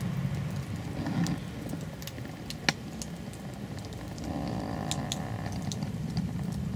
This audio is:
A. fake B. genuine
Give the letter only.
B